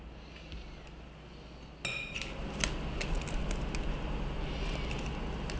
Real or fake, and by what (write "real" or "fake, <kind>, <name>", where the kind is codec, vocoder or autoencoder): real